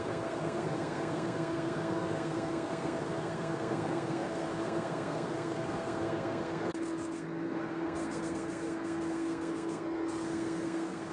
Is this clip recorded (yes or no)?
no